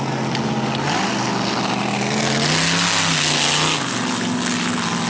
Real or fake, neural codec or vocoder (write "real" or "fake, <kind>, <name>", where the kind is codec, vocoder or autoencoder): real